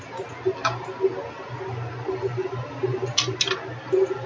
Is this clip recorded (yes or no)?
yes